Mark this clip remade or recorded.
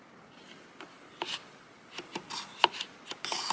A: recorded